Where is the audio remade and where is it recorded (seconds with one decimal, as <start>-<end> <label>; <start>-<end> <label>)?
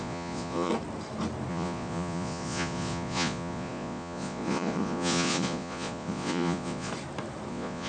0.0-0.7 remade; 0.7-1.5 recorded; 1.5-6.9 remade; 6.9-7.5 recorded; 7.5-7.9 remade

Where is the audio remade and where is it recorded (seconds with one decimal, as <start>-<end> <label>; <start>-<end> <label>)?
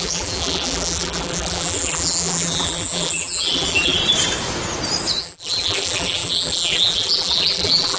0.0-4.0 remade; 4.0-5.2 recorded; 5.2-8.0 remade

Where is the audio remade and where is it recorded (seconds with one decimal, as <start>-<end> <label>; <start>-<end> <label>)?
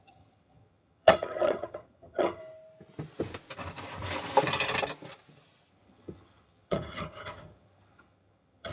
0.0-2.4 remade; 2.4-5.7 recorded; 5.7-8.7 remade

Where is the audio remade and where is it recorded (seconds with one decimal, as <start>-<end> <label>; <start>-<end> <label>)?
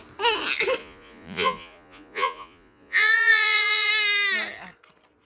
0.0-0.8 recorded; 0.8-3.9 remade; 3.9-5.2 recorded